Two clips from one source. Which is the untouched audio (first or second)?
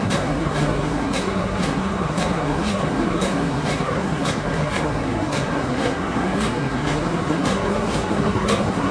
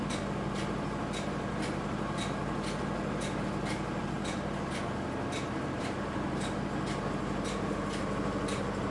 second